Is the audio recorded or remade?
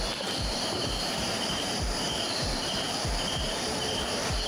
remade